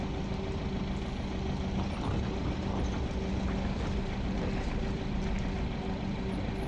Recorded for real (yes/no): yes